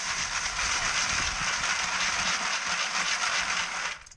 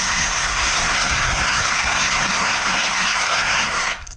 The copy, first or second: second